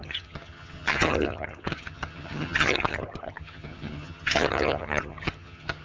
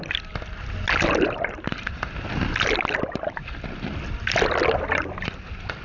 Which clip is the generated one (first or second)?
first